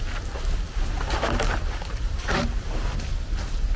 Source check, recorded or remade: recorded